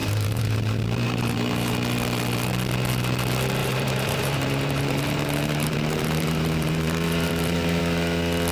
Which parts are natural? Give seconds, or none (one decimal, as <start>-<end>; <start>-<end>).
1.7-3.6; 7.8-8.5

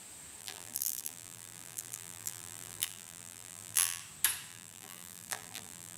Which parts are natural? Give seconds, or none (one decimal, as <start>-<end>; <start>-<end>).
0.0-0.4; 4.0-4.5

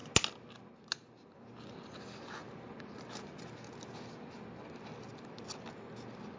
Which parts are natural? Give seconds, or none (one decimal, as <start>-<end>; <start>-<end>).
0.0-2.4; 3.1-6.4